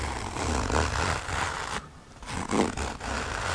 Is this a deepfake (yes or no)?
no